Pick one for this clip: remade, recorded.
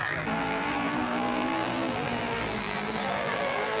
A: remade